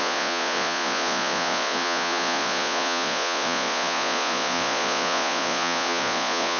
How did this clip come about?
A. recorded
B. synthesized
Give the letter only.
B